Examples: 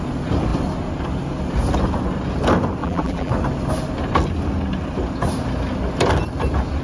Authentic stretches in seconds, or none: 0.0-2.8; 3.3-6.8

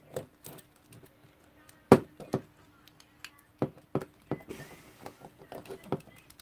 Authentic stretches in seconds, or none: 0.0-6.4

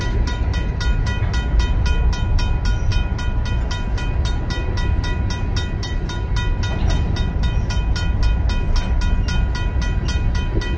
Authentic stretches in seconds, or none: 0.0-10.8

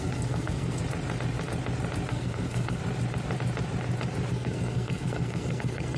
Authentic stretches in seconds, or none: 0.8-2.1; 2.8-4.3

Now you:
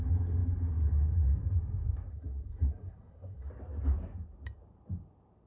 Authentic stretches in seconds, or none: 0.0-2.1; 3.5-5.5

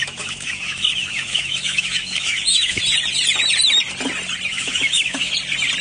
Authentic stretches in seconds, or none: 2.8-4.5; 5.3-5.8